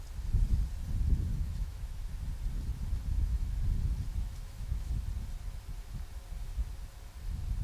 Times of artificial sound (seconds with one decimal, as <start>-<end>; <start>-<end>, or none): 1.3-2.1; 2.7-3.5; 4.1-4.9